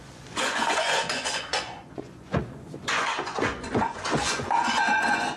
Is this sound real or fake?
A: fake